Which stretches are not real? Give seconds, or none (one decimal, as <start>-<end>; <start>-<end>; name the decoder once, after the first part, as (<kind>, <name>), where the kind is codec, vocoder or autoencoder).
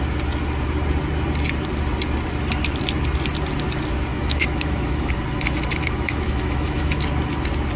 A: 4.1-5.1 (autoencoder, DAC-VAE); 5.8-7.0